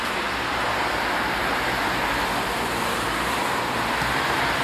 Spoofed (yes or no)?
no